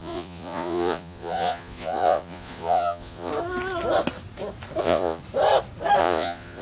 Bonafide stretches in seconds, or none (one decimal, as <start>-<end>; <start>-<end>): 3.3-4.8; 5.2-6.0